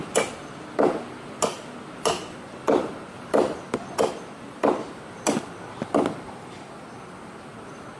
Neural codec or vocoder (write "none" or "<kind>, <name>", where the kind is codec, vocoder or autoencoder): none